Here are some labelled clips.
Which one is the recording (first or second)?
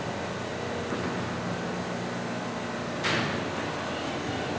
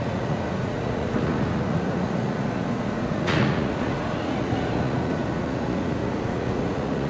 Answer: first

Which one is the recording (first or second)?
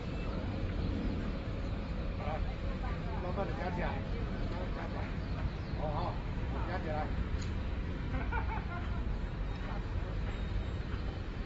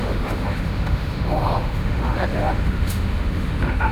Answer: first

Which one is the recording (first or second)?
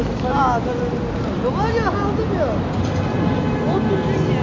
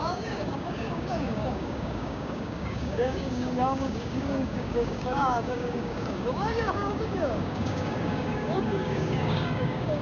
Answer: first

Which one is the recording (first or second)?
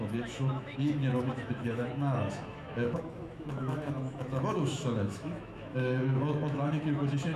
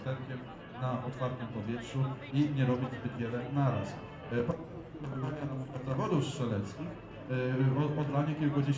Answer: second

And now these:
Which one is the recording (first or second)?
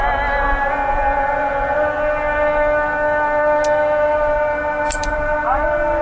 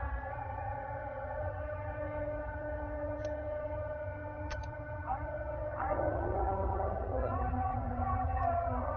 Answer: first